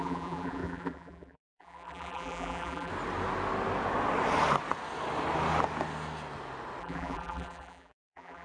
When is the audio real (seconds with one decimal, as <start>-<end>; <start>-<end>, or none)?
2.9-6.8